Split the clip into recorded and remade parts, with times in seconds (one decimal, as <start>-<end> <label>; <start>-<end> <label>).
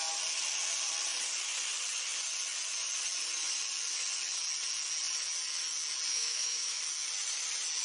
0.0-6.1 recorded; 6.1-6.8 remade; 6.8-7.8 recorded